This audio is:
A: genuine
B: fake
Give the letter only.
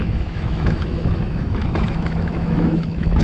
B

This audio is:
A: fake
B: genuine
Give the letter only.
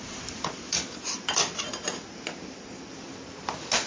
B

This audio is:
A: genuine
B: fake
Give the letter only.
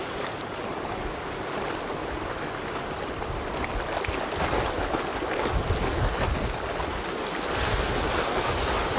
A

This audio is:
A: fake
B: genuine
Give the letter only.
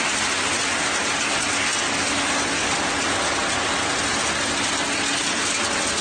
B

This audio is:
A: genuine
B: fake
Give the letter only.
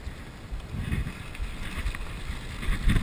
A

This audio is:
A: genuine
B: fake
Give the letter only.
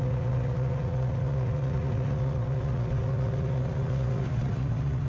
B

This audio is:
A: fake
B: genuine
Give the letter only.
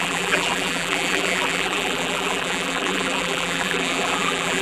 A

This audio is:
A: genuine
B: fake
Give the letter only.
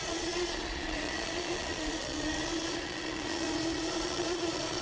B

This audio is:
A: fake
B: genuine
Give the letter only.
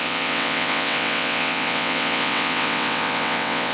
A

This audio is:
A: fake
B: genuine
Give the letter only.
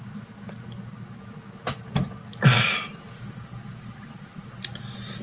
B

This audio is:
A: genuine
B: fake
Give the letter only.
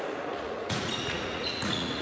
B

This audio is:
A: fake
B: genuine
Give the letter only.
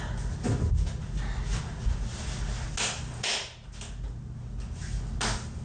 B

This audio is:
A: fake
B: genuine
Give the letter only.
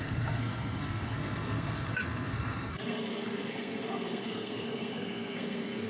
A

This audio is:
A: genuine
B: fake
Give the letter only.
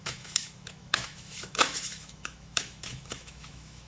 B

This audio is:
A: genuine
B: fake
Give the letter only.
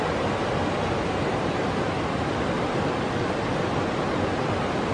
A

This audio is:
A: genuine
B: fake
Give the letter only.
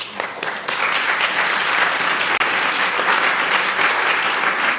A